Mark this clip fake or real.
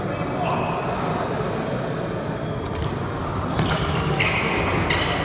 real